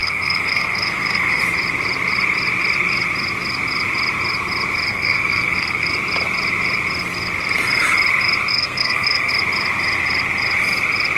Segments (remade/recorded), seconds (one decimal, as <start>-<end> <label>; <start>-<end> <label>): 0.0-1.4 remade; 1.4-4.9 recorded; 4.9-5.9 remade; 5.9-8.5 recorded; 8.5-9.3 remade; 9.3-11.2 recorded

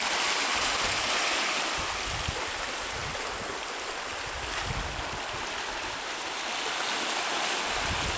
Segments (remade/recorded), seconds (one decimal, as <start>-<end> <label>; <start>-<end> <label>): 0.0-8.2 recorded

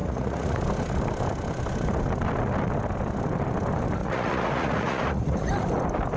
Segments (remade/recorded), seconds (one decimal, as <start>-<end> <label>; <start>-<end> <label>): 0.0-0.6 remade; 0.6-4.0 recorded; 4.0-5.5 remade; 5.5-6.2 recorded

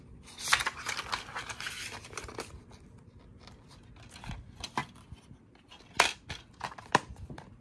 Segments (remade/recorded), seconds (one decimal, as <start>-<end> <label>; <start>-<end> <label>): 0.0-7.6 recorded